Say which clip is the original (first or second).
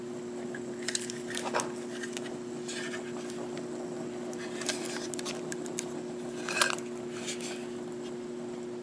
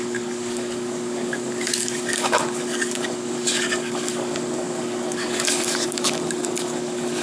first